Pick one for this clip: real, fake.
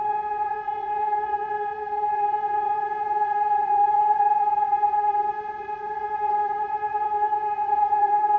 fake